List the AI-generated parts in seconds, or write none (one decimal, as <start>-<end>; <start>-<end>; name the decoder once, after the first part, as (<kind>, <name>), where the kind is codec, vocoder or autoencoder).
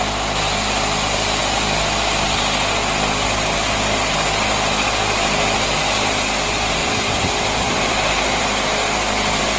6.8-8.1 (vocoder, BigVGAN v2)